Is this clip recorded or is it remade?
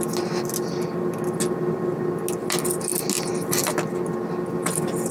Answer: recorded